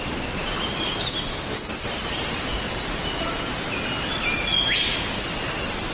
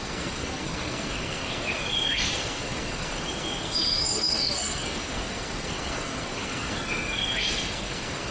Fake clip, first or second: second